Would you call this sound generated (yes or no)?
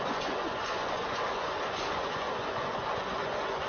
yes